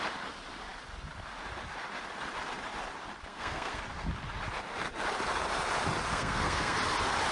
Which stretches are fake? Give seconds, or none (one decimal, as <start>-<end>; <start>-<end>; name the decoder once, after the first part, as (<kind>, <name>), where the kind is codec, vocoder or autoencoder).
3.3-3.8 (codec, SNAC); 6.1-6.8